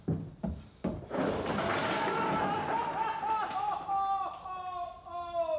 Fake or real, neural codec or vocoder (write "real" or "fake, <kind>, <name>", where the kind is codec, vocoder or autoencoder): real